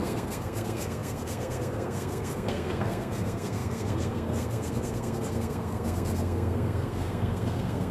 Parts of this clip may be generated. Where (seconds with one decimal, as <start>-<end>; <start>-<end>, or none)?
0.0-7.9